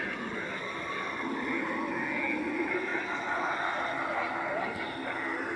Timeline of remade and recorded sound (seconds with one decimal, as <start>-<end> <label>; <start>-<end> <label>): 0.0-5.6 recorded